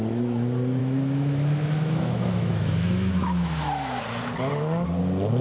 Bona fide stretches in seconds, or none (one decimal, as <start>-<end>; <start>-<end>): 0.0-0.8; 4.0-5.4